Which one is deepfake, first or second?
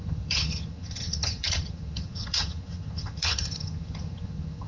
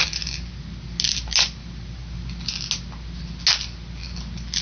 first